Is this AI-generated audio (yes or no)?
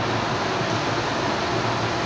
no